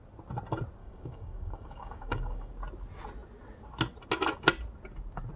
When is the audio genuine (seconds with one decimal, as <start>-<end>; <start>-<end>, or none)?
0.0-0.8; 2.5-5.4